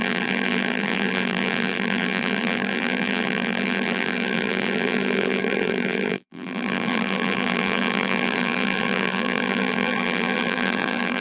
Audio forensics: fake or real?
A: fake